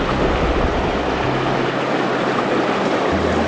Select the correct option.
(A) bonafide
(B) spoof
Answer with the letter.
A